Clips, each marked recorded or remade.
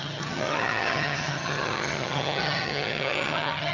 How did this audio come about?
remade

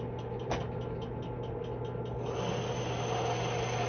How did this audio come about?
recorded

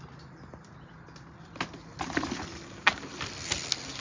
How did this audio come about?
recorded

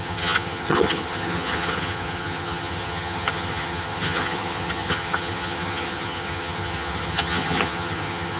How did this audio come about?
remade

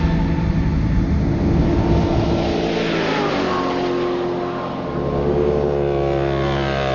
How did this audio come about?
recorded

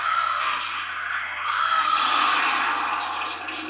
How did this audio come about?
recorded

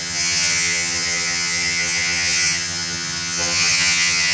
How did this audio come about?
remade